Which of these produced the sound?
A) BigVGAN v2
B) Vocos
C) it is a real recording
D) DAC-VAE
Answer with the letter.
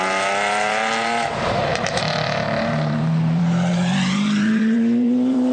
A